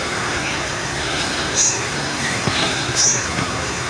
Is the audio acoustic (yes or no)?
no